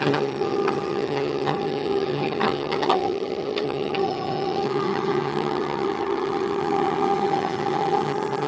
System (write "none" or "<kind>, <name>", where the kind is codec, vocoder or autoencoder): vocoder, HiFi-GAN